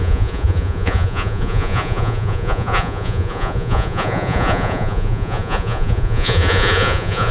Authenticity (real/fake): fake